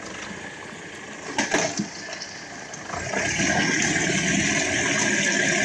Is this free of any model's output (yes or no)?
yes